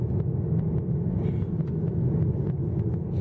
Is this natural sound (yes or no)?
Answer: yes